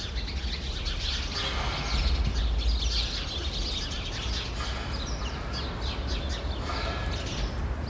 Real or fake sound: real